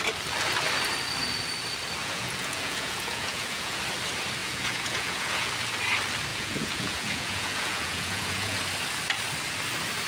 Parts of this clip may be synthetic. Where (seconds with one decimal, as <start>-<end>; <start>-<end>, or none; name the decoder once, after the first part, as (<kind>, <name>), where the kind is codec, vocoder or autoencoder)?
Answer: 2.0-3.8 (vocoder, Vocos); 4.4-5.5; 6.3-8.6